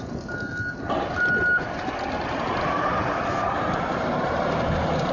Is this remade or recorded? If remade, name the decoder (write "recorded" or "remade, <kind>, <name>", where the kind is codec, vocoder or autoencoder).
recorded